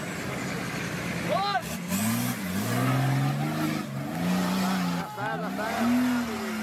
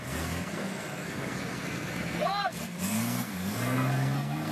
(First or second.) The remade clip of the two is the second